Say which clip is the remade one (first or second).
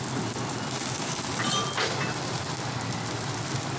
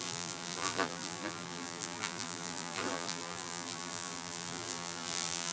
second